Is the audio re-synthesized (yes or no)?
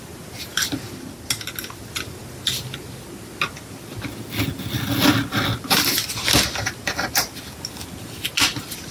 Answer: no